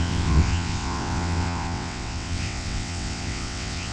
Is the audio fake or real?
fake